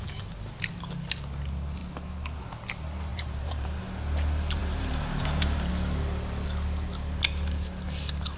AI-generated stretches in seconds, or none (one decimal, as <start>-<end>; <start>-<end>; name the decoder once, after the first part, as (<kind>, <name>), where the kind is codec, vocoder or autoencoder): 3.1-3.8 (vocoder, BigVGAN v2); 4.6-5.7